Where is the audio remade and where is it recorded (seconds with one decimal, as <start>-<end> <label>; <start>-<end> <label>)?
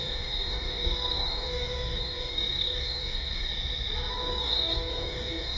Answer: 0.0-3.5 remade; 3.5-4.1 recorded; 4.1-5.6 remade